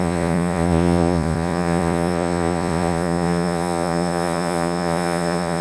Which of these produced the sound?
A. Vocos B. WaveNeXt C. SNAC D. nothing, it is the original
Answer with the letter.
A